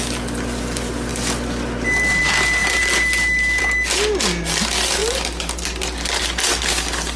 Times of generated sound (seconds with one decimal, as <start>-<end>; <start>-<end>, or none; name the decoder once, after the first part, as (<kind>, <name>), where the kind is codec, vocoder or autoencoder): none